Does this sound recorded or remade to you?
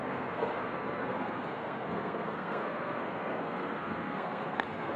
remade